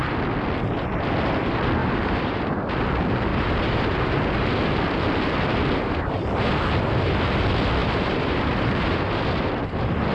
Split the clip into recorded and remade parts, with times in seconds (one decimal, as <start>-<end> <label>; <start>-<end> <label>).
0.0-1.8 recorded; 1.8-2.6 remade; 2.6-3.3 recorded; 3.3-4.5 remade; 4.5-7.8 recorded; 7.8-9.2 remade; 9.2-10.1 recorded